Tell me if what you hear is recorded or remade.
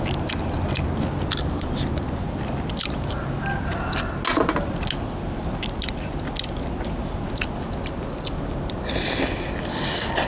recorded